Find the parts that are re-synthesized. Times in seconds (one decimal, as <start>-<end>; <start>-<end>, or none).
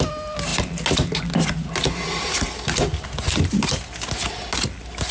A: none